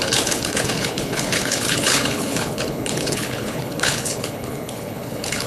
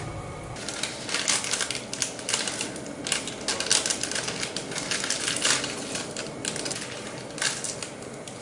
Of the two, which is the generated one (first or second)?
first